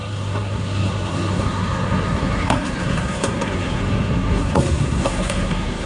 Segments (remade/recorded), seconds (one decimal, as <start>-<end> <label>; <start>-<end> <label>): 0.0-5.9 remade